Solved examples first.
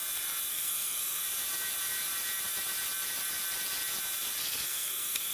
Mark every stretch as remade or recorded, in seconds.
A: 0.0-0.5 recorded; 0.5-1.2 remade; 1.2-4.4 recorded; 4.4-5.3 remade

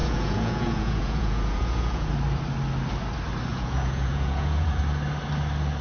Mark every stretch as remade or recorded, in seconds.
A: 0.0-2.1 remade; 2.1-3.5 recorded; 3.5-4.8 remade; 4.8-5.8 recorded

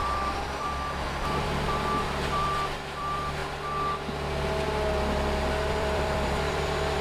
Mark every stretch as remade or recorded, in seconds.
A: 0.0-3.4 remade; 3.4-5.7 recorded; 5.7-7.0 remade

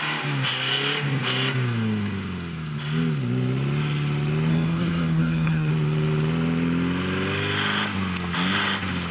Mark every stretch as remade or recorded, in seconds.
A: 0.0-4.5 recorded; 4.5-5.7 remade; 5.7-9.1 recorded

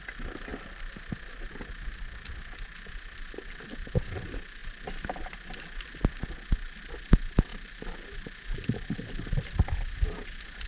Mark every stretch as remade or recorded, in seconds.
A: 0.0-10.7 recorded

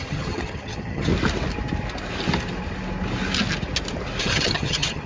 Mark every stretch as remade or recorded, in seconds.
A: 0.0-1.1 remade; 1.1-4.2 recorded; 4.2-5.1 remade

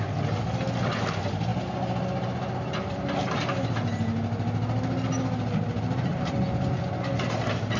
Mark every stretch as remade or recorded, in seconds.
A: 0.0-7.8 recorded